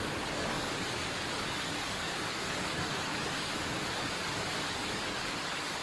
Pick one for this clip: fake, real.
fake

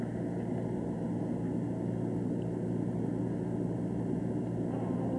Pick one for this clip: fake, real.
real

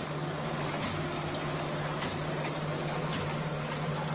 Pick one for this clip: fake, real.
real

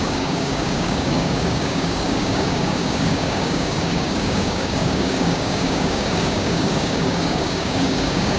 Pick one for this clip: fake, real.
fake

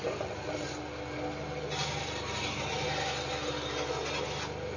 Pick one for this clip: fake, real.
real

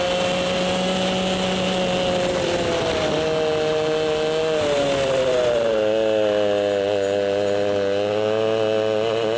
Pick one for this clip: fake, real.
real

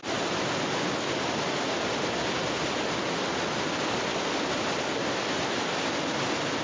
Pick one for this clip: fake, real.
real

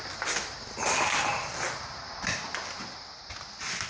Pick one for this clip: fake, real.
real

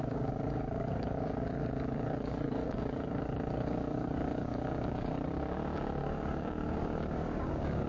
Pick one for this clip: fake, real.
fake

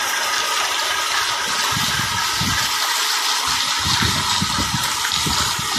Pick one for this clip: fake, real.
real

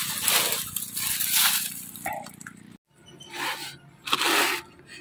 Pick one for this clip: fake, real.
real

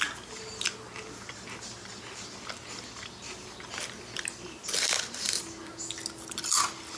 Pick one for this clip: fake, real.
real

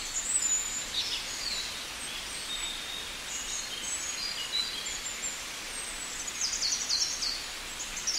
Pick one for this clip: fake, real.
real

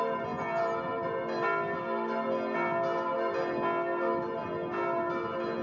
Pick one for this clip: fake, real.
real